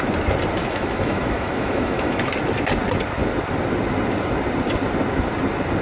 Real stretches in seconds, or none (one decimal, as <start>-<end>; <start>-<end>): 0.0-0.6; 2.3-5.8